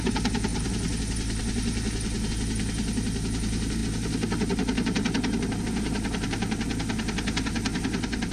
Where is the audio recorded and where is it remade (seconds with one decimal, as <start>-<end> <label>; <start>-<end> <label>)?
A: 0.0-8.3 recorded